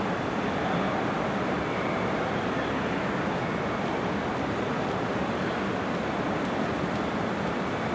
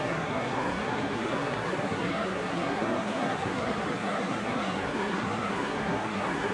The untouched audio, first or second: first